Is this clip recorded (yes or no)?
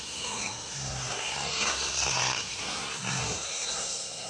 no